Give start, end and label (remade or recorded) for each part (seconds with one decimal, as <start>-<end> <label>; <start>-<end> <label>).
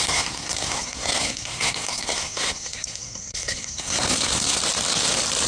0.0-4.6 remade; 4.6-5.5 recorded